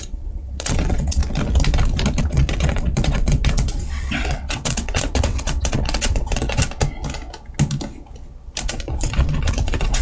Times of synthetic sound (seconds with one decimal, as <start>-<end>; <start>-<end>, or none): 0.0-1.2; 2.2-6.6; 8.6-10.0